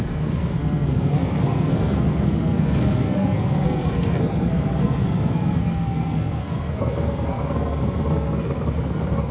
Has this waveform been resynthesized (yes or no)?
yes